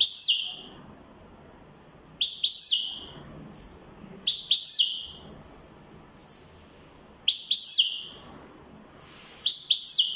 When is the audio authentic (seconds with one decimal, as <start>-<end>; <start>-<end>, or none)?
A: 0.0-10.2